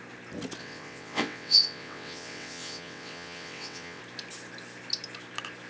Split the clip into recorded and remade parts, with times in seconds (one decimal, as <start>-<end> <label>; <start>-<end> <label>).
0.0-0.6 recorded; 0.6-4.0 remade; 4.0-5.7 recorded